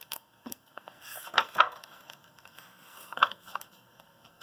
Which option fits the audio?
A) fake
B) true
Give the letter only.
A